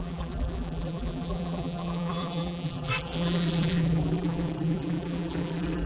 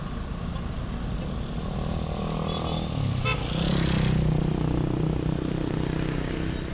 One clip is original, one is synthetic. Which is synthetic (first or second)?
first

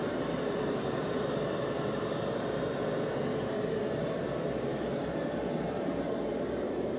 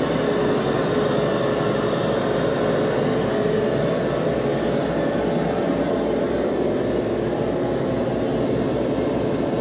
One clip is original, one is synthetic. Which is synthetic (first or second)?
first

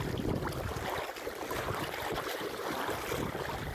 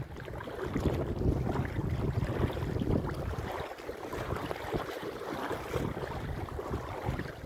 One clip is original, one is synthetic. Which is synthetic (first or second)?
second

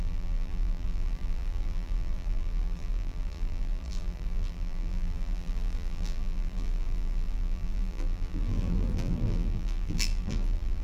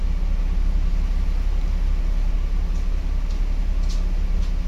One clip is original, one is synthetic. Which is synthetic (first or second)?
first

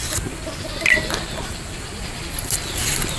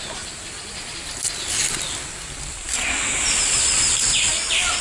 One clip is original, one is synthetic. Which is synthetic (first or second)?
first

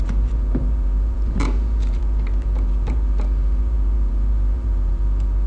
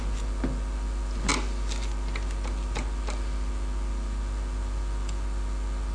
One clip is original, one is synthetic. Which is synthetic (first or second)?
first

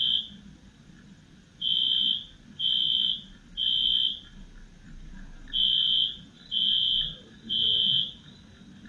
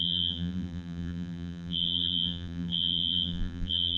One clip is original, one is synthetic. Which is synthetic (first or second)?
second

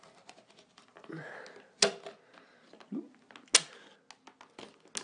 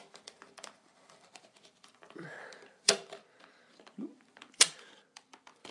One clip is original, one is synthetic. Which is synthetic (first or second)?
second